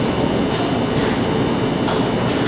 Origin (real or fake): real